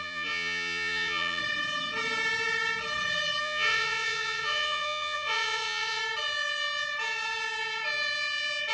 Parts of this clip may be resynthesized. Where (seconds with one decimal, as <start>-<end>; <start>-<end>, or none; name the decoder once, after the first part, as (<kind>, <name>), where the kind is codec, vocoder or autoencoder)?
0.0-1.4 (vocoder, Vocos); 3.4-6.0